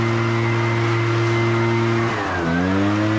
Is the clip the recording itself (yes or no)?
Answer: yes